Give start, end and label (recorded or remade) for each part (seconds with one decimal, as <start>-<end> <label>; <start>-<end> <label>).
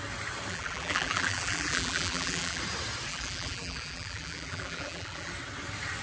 0.0-0.5 recorded; 0.5-2.6 remade; 2.6-3.1 recorded; 3.1-5.3 remade; 5.3-6.0 recorded